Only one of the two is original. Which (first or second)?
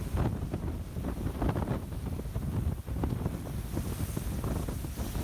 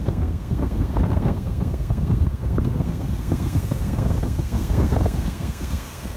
first